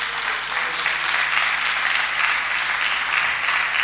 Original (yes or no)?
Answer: yes